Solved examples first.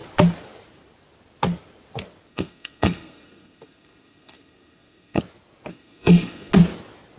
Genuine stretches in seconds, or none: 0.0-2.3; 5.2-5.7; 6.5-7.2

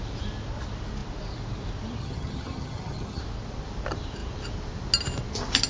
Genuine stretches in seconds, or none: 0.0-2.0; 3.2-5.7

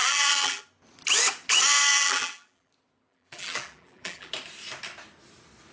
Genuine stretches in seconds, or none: 0.6-1.9; 2.7-3.1; 4.3-5.7

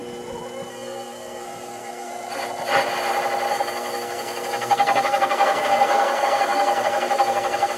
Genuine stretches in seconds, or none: 0.0-0.7; 2.1-3.5

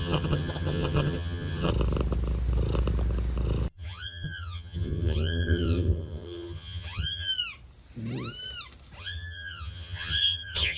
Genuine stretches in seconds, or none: 1.7-3.7; 7.3-9.0